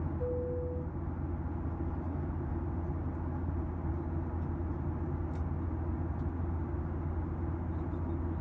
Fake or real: real